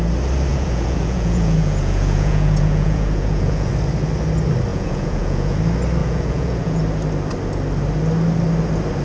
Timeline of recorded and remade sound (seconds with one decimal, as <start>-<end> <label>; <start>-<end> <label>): 0.0-0.5 recorded; 0.5-3.7 remade; 3.7-4.7 recorded; 4.7-5.6 remade; 5.6-6.0 recorded; 6.0-6.8 remade; 6.8-9.0 recorded